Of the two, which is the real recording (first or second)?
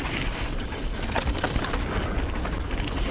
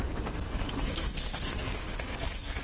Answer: first